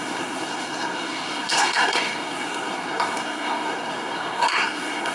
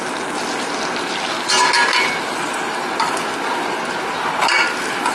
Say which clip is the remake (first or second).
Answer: first